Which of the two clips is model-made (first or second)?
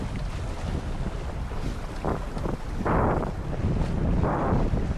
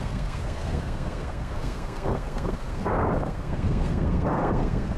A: second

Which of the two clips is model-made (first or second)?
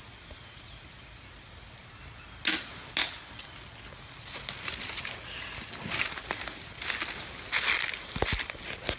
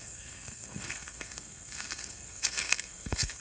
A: second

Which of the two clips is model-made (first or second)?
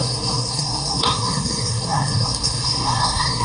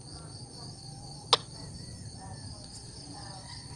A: first